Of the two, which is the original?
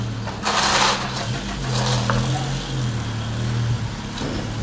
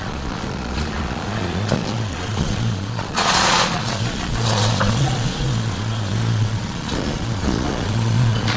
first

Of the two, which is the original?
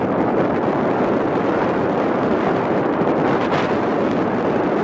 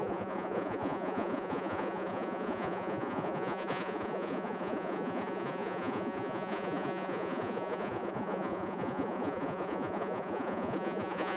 first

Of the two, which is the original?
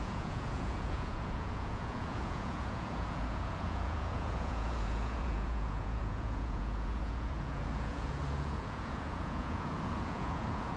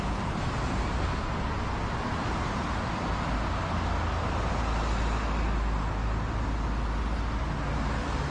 second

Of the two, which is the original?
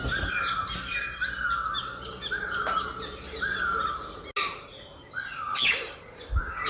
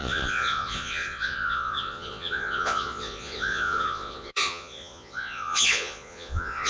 first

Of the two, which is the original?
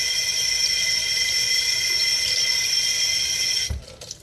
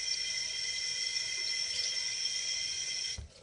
first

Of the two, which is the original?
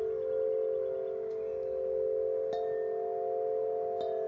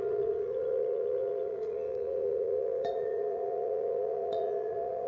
first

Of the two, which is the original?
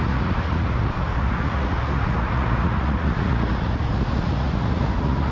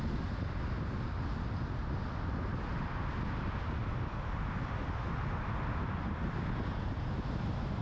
second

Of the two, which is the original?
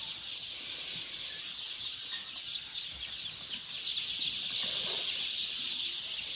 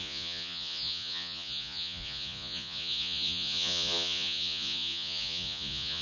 first